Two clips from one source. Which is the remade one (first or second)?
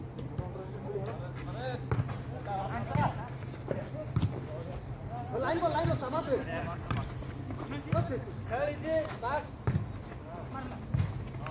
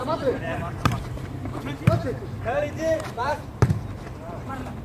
second